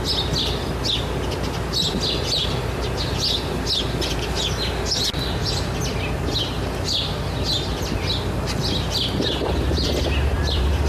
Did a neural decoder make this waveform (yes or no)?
no